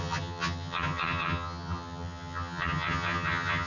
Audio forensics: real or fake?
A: fake